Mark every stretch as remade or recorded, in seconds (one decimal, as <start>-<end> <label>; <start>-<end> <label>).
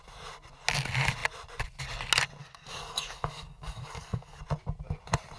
0.0-2.4 recorded; 2.4-4.4 remade; 4.4-5.4 recorded